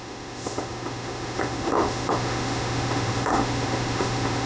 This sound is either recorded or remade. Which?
remade